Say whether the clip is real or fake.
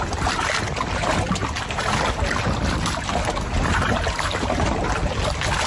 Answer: real